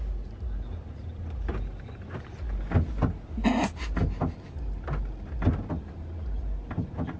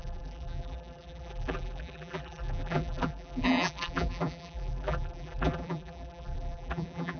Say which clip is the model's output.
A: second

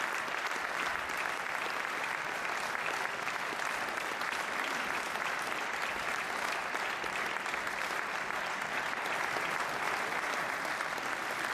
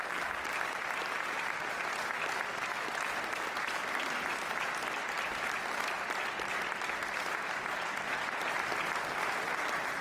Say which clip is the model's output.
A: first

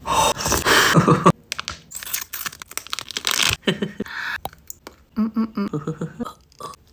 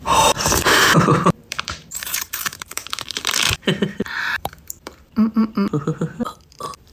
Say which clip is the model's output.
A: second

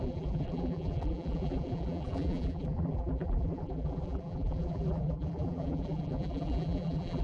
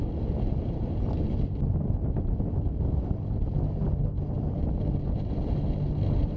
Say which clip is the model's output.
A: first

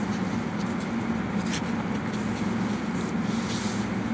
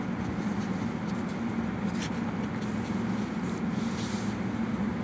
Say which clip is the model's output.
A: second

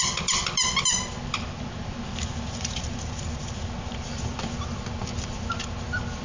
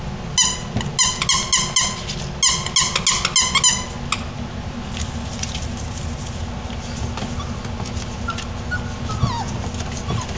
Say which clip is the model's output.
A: first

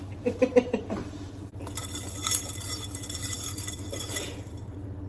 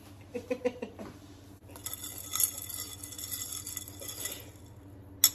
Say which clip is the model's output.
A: first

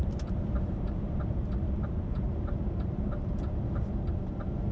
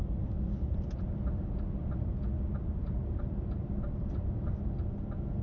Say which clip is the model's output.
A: first